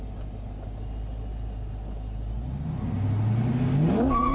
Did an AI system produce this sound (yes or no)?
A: no